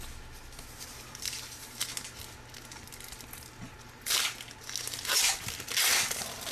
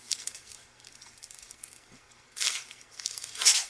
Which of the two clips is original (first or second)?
first